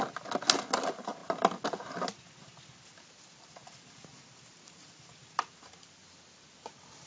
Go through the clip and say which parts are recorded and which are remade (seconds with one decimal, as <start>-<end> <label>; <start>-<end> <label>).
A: 0.0-7.1 recorded

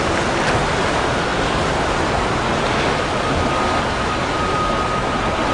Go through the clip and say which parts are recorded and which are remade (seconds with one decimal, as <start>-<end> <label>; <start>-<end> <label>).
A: 0.0-5.5 recorded

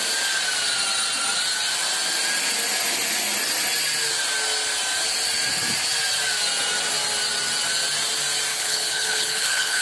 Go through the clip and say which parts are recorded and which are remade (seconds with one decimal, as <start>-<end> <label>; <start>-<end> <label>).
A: 0.0-8.5 recorded; 8.5-9.8 remade

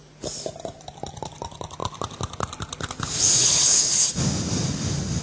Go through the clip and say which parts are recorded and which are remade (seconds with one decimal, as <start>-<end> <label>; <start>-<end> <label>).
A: 0.0-3.4 recorded; 3.4-4.1 remade; 4.1-5.2 recorded

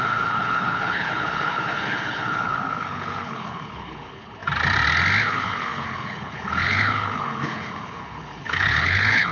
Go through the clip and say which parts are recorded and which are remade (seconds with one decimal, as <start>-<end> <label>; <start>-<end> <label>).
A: 0.0-4.4 remade; 4.4-5.2 recorded; 5.2-9.3 remade

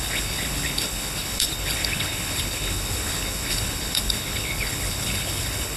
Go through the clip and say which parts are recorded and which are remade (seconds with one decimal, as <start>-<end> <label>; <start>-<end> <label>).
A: 0.0-5.8 remade

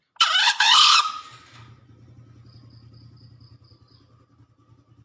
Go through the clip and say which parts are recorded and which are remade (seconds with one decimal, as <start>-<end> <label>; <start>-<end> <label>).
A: 0.0-0.4 recorded; 0.4-1.0 remade; 1.0-5.0 recorded

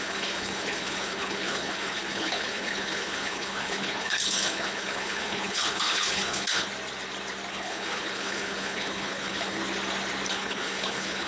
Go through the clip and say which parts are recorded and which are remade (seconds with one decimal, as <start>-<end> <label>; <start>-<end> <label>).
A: 0.0-6.7 remade; 6.7-7.5 recorded; 7.5-9.6 remade; 9.6-10.3 recorded; 10.3-11.3 remade